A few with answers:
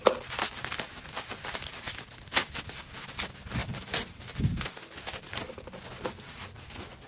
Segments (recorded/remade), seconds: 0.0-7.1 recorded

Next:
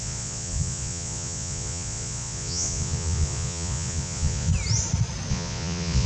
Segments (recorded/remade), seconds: 0.0-4.5 remade; 4.5-5.3 recorded; 5.3-6.1 remade

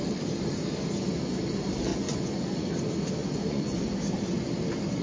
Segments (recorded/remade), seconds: 0.0-1.9 recorded; 1.9-2.7 remade; 2.7-3.2 recorded; 3.2-3.8 remade; 3.8-5.0 recorded

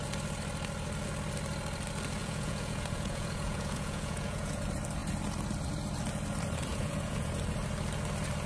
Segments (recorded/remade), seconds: 0.0-2.2 recorded; 2.2-4.6 remade; 4.6-6.7 recorded; 6.7-7.3 remade; 7.3-8.5 recorded

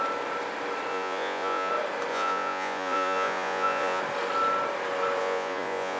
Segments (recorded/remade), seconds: 0.0-0.9 recorded; 0.9-1.7 remade; 1.7-2.1 recorded; 2.1-4.0 remade; 4.0-5.2 recorded; 5.2-6.0 remade

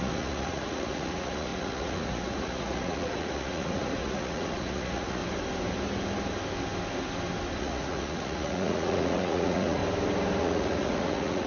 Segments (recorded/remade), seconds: 0.0-5.2 remade; 5.2-7.6 recorded; 7.6-9.8 remade; 9.8-10.4 recorded; 10.4-11.5 remade